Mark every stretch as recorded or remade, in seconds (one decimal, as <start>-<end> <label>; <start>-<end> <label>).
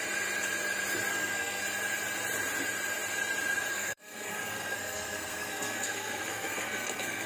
0.0-1.1 recorded; 1.1-1.6 remade; 1.6-3.7 recorded; 3.7-7.3 remade